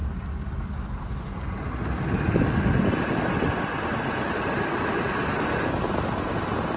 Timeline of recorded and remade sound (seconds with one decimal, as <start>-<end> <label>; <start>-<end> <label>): 0.0-6.8 recorded